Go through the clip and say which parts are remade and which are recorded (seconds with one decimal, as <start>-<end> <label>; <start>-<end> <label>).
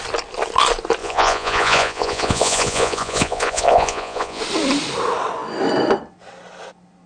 0.0-1.0 recorded; 1.0-4.4 remade; 4.4-7.1 recorded